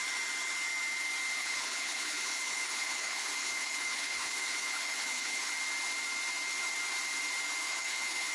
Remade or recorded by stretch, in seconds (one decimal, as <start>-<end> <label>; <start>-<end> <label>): 0.0-1.4 recorded; 1.4-5.5 remade; 5.5-7.6 recorded; 7.6-8.3 remade